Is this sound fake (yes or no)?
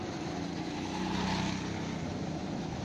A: no